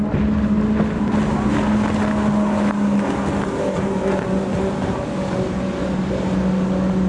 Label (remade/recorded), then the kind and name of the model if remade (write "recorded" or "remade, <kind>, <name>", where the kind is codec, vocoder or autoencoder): recorded